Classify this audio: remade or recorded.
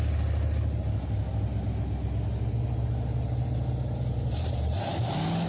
recorded